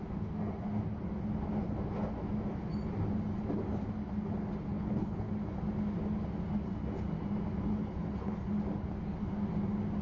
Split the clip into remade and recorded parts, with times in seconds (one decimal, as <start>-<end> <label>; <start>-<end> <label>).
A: 0.0-4.7 recorded; 4.7-5.3 remade; 5.3-7.7 recorded; 7.7-8.5 remade; 8.5-10.0 recorded